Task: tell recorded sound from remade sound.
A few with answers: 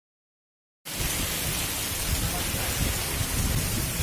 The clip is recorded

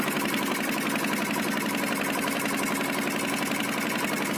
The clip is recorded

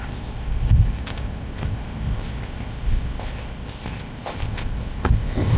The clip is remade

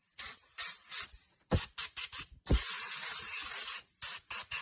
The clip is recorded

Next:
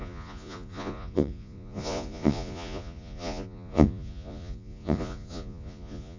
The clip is remade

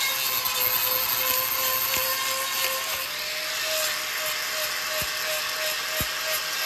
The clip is recorded